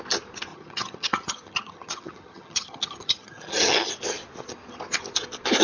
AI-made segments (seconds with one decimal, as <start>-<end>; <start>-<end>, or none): 0.5-3.9